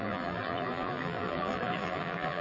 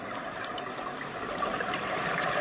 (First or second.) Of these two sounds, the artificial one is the first